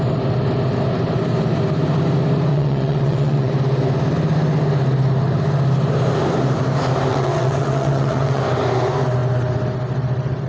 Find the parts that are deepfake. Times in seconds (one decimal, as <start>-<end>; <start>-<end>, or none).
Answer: 2.5-3.5; 7.1-8.4